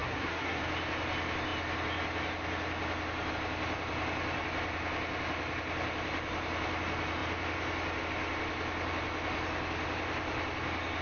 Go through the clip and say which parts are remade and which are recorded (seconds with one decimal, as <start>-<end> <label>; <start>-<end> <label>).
0.0-0.6 remade; 0.6-11.0 recorded